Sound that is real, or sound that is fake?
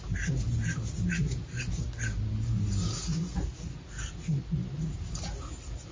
real